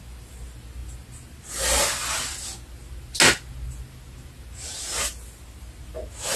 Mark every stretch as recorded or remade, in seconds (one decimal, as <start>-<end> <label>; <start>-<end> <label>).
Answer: 0.0-6.4 recorded